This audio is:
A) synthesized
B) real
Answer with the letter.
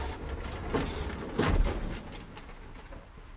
B